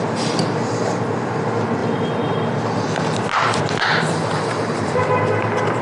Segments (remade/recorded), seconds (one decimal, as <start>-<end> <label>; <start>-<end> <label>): 0.0-3.9 recorded; 3.9-5.0 remade; 5.0-5.8 recorded